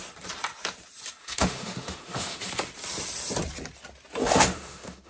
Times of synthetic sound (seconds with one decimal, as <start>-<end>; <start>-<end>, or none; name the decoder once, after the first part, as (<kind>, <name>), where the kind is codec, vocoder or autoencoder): 1.2-2.5 (autoencoder, DAC-VAE); 4.2-5.1